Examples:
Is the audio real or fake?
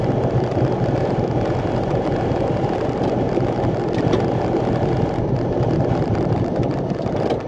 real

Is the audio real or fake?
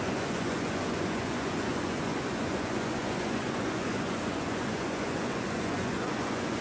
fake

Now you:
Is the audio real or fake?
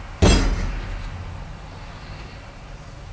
real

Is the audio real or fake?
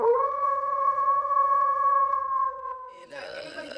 fake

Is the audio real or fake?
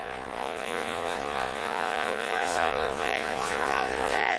fake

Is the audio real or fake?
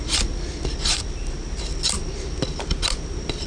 real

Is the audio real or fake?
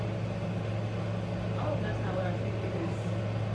real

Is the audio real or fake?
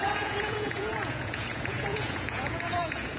fake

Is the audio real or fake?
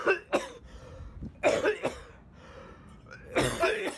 real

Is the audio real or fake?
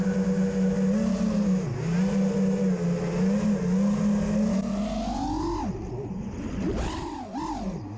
real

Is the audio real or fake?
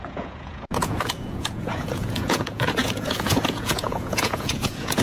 fake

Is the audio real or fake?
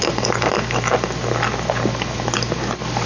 real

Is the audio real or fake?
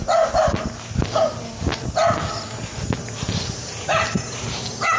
real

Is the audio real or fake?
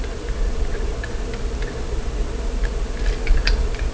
real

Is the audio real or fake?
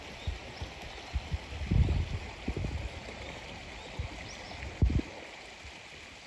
real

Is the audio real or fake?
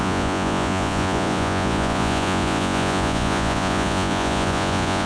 fake